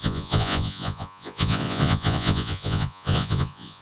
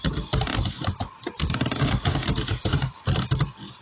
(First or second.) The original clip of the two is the second